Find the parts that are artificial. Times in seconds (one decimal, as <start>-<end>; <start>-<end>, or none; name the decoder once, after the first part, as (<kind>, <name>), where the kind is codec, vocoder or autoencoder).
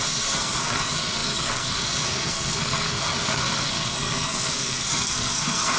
0.0-5.8 (codec, SNAC)